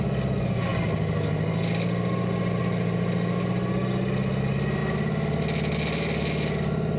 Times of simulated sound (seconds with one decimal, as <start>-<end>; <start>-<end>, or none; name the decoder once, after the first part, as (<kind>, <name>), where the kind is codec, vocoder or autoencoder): none